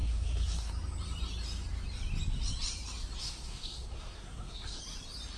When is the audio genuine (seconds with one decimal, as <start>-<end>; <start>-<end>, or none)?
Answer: 0.7-3.2; 4.8-5.4